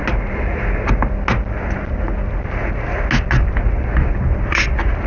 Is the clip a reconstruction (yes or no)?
no